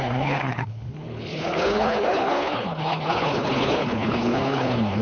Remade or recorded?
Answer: remade